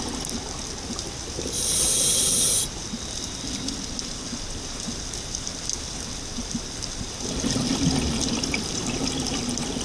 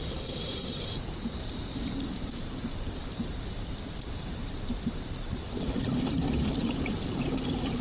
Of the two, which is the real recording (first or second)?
first